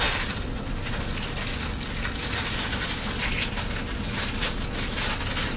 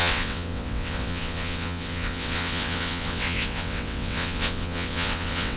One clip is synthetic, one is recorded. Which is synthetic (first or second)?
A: second